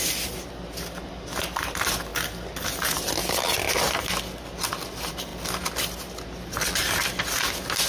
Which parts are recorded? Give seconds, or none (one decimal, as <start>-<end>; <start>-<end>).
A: 0.0-7.9